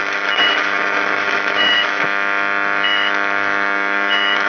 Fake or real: fake